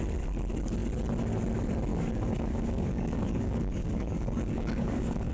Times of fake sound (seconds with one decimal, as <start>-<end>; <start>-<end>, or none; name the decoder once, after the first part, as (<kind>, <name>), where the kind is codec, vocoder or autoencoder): 1.9-5.3 (codec, DAC)

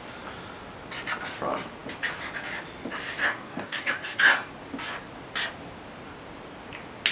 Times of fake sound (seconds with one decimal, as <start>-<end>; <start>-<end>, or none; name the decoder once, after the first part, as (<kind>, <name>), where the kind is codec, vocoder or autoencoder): 3.2-4.5 (codec, DAC)

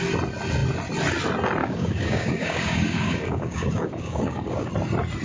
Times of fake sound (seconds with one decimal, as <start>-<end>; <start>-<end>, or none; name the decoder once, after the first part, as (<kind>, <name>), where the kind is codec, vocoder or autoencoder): 1.6-4.7 (codec, DAC)

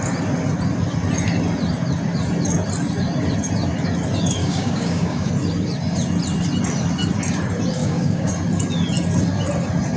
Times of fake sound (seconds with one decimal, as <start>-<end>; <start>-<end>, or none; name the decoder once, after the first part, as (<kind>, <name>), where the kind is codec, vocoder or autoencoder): 4.4-5.3 (codec, DAC); 7.8-8.3

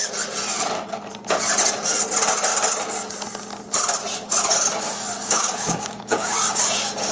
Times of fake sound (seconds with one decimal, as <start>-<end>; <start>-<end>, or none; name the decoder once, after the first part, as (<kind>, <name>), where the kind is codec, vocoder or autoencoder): 5.2-7.1 (codec, DAC)

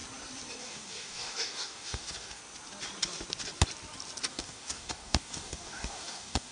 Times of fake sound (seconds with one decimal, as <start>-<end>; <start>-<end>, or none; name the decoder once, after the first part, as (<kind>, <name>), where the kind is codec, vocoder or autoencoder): 0.6-2.4 (codec, DAC); 4.3-6.5

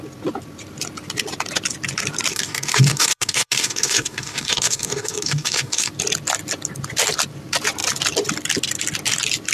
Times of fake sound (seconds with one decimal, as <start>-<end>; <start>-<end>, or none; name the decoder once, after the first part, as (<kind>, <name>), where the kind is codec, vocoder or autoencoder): 2.3-5.9 (codec, DAC)